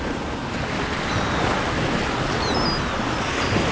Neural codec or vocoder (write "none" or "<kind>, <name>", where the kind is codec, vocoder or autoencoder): none